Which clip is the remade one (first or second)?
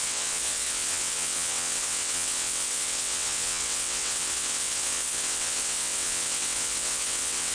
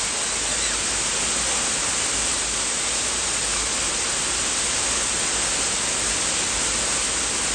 first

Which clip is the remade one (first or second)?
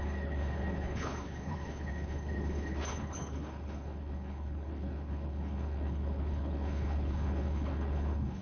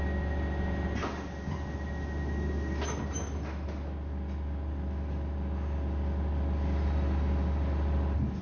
first